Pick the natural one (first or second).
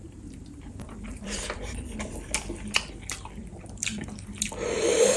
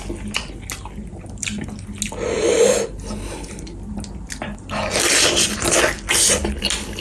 second